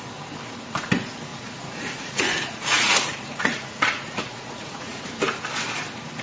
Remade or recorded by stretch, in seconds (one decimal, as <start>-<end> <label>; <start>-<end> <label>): 0.0-1.3 recorded; 1.3-5.0 remade; 5.0-6.2 recorded